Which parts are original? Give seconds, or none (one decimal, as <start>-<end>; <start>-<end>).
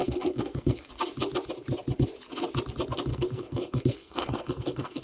0.9-3.1